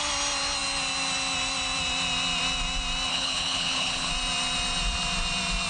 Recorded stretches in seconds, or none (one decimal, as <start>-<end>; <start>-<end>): 0.0-3.1; 4.1-5.7